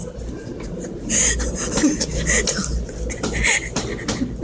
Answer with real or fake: real